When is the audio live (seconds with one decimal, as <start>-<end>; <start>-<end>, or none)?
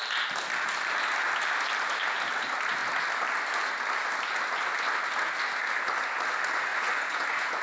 0.0-6.7